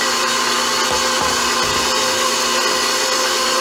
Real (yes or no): yes